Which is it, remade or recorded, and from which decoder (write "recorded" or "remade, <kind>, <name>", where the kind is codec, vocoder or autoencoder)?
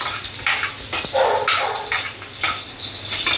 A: recorded